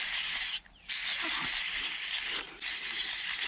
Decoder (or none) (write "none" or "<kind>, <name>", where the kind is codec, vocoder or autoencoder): none